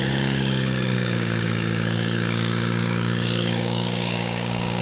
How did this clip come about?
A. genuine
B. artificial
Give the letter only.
B